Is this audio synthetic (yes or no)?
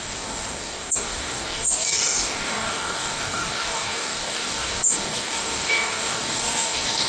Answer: yes